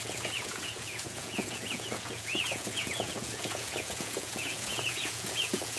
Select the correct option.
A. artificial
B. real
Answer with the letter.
A